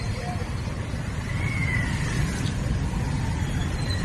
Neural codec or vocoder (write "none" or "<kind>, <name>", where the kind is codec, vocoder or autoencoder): none